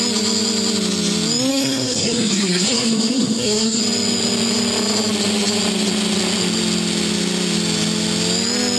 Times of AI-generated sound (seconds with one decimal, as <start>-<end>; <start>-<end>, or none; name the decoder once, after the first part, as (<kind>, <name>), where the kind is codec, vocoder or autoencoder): 1.5-3.8 (codec, SNAC)